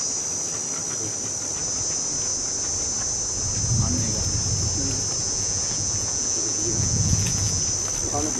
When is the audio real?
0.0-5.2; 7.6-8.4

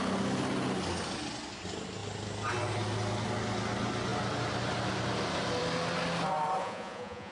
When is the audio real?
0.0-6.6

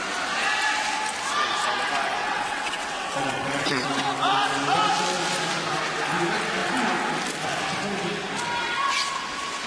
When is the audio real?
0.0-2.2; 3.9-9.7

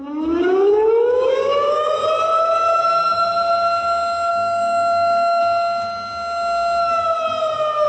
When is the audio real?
2.0-4.3; 5.4-7.9

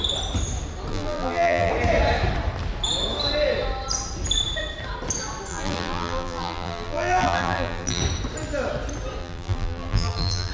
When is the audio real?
0.0-0.9; 1.7-5.5; 8.0-9.2